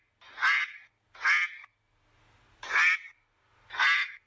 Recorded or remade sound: recorded